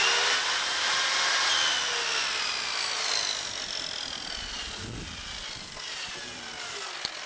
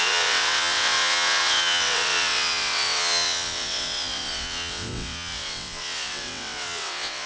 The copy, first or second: second